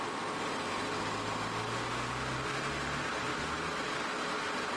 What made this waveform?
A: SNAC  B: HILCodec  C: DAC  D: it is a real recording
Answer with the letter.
D